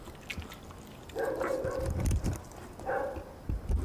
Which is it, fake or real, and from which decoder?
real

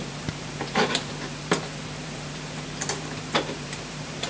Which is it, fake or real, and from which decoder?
fake, vocoder, BigVGAN v2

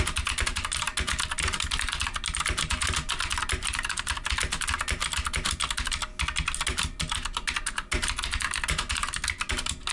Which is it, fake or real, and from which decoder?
real